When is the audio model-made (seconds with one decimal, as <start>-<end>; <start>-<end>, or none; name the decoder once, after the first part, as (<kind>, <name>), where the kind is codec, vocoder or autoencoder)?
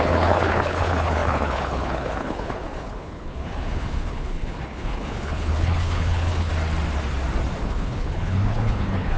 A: 0.0-6.5 (codec, HILCodec); 7.6-9.2